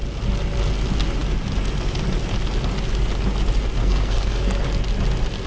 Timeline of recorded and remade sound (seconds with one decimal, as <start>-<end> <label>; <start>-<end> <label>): 0.0-3.8 recorded; 3.8-4.7 remade; 4.7-5.5 recorded